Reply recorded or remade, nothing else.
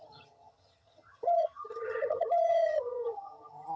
remade